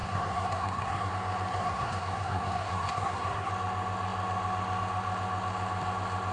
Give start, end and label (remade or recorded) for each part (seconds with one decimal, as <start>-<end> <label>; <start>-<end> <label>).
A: 0.0-1.1 remade; 1.1-1.5 recorded; 1.5-3.5 remade; 3.5-6.3 recorded